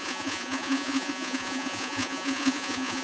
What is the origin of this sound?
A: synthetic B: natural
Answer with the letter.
A